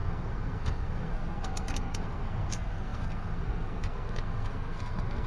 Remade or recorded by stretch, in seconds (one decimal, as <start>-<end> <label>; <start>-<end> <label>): 0.0-5.3 remade